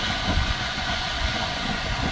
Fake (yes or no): yes